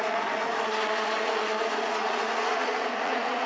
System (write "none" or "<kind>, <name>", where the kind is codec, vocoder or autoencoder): vocoder, Vocos